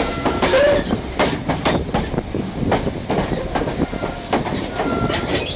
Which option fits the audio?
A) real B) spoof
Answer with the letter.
A